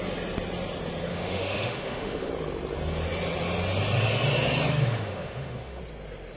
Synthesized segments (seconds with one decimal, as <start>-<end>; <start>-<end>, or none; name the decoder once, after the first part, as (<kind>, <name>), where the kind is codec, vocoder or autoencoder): 1.1-2.3 (autoencoder, DAC-VAE); 4.7-5.8